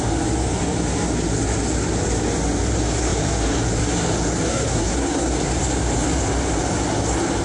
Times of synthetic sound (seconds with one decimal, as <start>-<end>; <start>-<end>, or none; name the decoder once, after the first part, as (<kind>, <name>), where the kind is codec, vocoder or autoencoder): 4.5-5.3 (codec, SNAC)